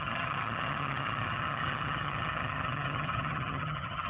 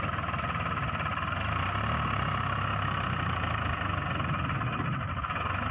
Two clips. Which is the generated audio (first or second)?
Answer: first